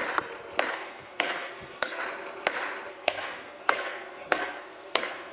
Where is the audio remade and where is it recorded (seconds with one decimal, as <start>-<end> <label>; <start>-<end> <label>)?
0.0-0.7 recorded; 0.7-2.0 remade; 2.0-2.9 recorded; 2.9-5.3 remade